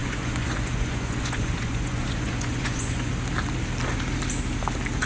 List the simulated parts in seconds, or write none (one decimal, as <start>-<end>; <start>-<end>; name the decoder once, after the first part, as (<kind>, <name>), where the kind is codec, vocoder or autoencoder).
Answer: 0.0-3.1 (vocoder, Vocos)